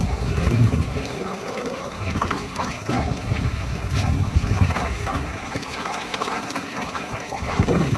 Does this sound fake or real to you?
fake